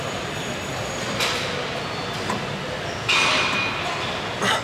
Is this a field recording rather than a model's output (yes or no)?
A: yes